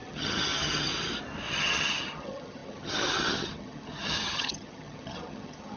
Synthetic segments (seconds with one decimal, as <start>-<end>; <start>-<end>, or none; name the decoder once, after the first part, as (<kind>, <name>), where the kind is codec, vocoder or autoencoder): 0.0-0.9 (vocoder, HiFi-GAN); 1.5-5.8